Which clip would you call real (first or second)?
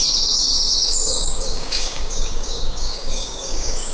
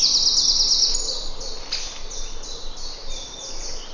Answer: second